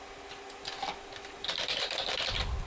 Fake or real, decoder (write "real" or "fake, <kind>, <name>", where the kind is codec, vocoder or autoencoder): real